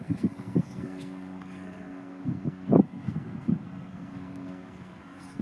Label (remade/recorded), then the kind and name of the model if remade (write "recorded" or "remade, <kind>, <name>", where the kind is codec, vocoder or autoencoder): remade, codec, SNAC